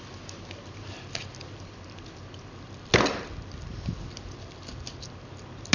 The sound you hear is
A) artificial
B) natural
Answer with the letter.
B